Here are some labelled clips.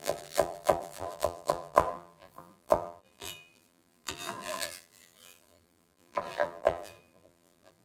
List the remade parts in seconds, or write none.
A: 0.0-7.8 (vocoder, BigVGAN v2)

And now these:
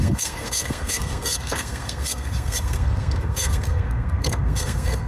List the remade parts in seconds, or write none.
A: 0.0-5.1 (codec, SNAC)

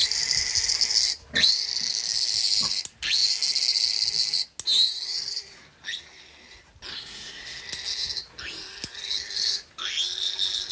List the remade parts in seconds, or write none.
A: 6.9-7.6 (codec, SNAC)